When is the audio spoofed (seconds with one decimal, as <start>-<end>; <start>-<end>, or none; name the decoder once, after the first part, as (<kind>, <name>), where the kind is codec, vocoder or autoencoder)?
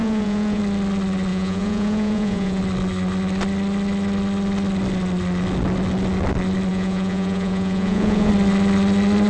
0.0-0.6 (vocoder, Vocos); 1.3-2.6; 6.7-8.3